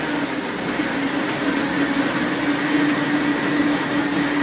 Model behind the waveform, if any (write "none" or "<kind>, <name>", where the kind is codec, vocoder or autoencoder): none